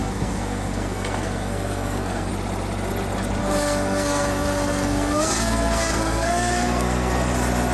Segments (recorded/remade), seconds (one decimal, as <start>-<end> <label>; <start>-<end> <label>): 0.0-2.3 remade; 2.3-3.4 recorded; 3.4-7.1 remade; 7.1-7.7 recorded